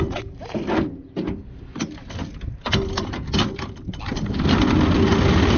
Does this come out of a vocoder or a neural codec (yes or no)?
no